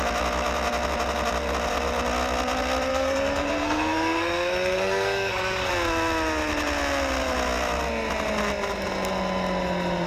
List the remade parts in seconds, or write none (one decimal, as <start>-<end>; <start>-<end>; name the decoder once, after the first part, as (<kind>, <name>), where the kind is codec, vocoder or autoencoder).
2.9-5.7 (codec, SNAC)